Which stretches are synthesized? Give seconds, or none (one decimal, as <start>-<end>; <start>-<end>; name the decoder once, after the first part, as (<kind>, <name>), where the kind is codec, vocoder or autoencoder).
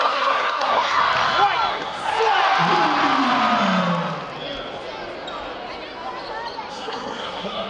0.0-1.0 (codec, SNAC); 1.7-2.1; 6.7-7.7